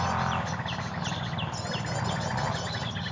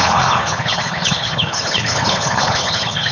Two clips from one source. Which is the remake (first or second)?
second